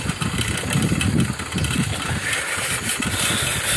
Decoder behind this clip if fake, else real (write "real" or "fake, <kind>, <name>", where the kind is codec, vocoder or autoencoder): real